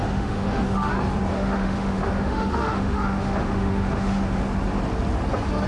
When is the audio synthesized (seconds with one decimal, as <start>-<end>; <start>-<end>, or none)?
0.0-0.9; 1.3-4.4